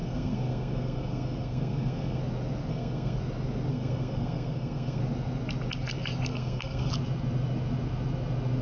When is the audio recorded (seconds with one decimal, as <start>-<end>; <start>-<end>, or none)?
2.2-2.7; 3.2-3.7; 5.0-6.3; 6.9-8.6